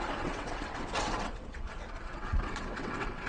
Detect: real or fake fake